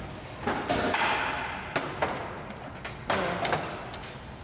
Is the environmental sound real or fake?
real